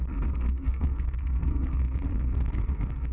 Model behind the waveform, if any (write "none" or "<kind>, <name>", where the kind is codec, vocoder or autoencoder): codec, SNAC